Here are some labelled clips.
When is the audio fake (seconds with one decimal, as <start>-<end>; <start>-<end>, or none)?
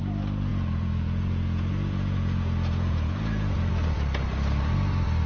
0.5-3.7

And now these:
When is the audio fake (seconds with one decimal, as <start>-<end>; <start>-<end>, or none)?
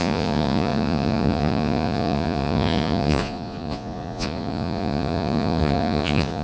0.0-6.4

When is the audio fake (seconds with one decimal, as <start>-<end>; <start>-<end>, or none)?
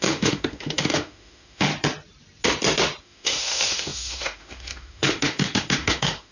0.0-1.7; 3.0-6.3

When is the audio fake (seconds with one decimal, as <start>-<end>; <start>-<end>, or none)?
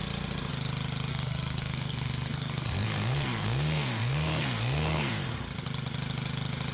1.1-5.1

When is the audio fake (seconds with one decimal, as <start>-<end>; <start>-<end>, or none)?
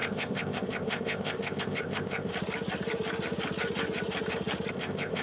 0.0-2.3; 4.7-5.2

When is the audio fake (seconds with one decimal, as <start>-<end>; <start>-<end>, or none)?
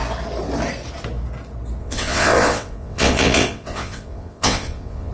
1.8-5.1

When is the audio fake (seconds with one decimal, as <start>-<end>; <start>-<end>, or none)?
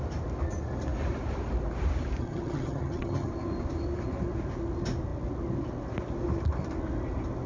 2.2-3.3